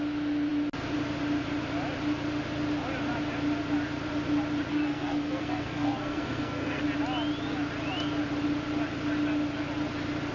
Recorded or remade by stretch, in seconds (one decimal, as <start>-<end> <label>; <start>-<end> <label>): 0.0-4.7 recorded; 4.7-6.8 remade; 6.8-10.3 recorded